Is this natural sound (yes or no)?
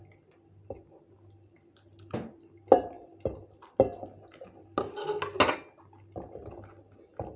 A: yes